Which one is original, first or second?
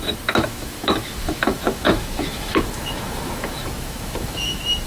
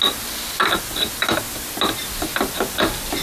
second